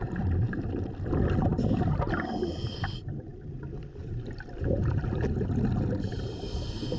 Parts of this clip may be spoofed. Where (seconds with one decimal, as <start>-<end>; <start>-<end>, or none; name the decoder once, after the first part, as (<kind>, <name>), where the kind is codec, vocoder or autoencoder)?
none